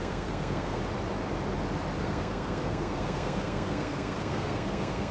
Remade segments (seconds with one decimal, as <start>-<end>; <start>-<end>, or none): 0.0-0.8; 2.0-5.1